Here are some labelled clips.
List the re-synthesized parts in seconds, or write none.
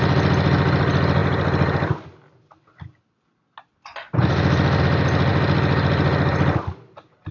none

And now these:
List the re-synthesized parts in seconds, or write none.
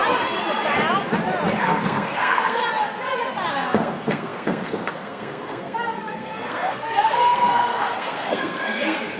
1.6-2.6 (codec, SNAC); 3.5-9.2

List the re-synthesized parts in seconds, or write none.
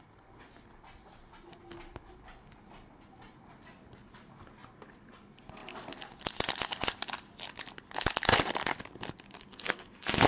9.5-10.3 (codec, SNAC)